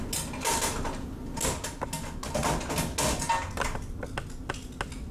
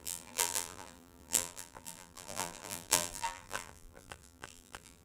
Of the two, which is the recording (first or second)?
first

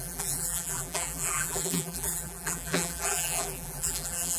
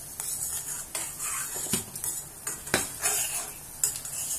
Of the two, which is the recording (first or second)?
second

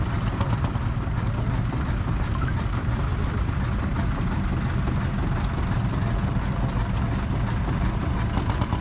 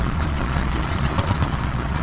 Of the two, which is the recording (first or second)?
first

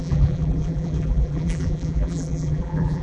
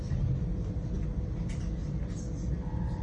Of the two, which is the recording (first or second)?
second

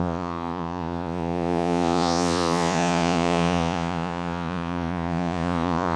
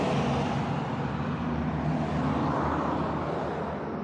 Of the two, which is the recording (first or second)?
second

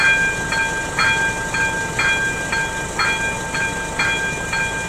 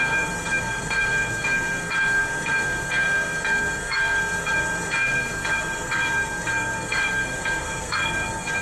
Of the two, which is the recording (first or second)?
first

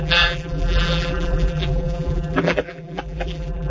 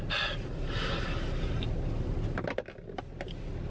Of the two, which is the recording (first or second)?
second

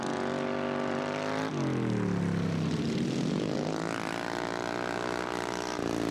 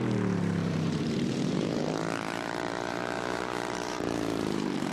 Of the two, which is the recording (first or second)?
first